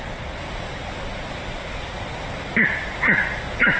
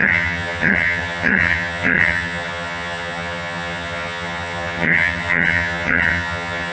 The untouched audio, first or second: first